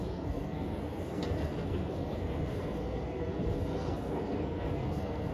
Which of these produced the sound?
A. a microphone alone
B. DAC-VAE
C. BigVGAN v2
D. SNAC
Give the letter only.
D